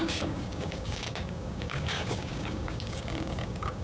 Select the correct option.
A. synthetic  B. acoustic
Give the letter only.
A